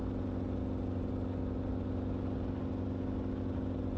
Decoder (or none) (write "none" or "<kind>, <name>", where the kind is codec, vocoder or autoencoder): none